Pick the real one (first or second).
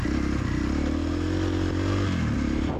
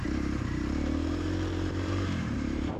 first